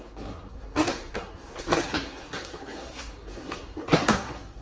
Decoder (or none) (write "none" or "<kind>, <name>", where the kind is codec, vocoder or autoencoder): codec, SNAC